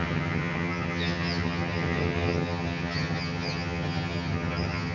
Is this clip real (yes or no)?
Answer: no